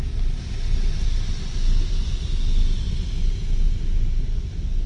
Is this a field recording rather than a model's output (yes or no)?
yes